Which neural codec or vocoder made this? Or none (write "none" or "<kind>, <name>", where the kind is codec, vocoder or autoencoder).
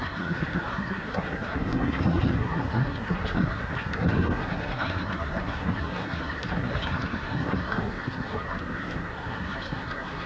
codec, SNAC